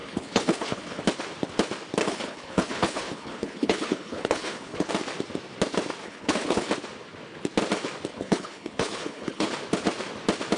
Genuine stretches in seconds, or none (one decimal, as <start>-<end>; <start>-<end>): 1.0-2.0; 4.9-6.0; 6.7-8.1; 9.5-10.6